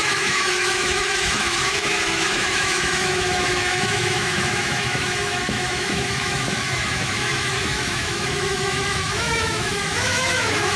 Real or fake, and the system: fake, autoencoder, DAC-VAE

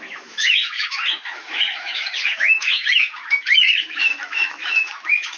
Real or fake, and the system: fake, autoencoder, DAC-VAE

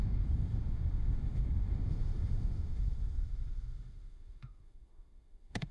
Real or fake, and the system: fake, autoencoder, DAC-VAE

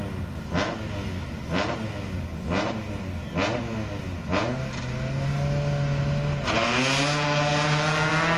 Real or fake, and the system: real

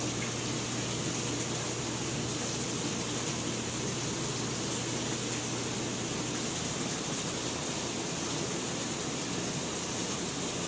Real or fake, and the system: real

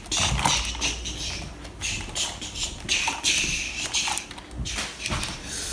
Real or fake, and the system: real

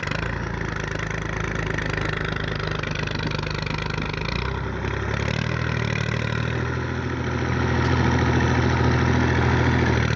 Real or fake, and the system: real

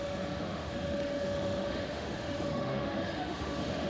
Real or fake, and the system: fake, autoencoder, DAC-VAE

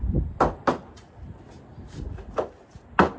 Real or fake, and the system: real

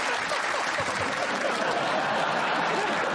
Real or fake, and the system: real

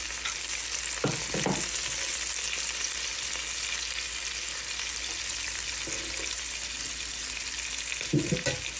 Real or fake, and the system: real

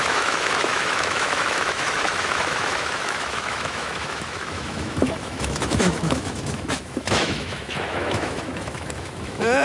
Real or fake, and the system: fake, autoencoder, DAC-VAE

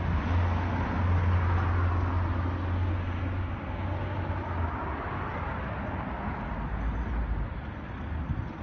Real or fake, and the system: real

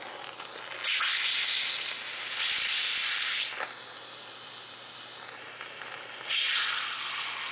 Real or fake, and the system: real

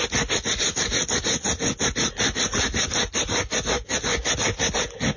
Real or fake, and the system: real